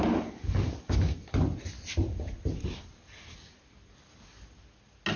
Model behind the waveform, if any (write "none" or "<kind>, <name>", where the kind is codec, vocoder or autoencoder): none